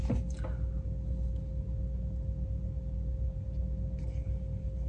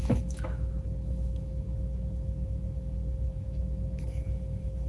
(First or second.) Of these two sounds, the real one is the first